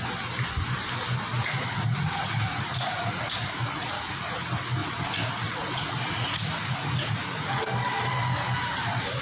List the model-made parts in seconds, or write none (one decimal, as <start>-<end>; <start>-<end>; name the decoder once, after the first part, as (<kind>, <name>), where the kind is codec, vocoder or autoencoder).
1.3-4.2 (vocoder, Vocos); 4.8-7.5